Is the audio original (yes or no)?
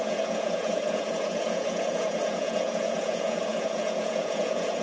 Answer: no